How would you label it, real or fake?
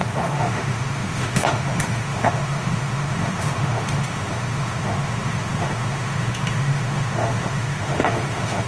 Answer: fake